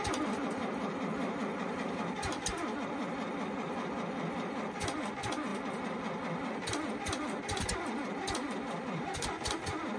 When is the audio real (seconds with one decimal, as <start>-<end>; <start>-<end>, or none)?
none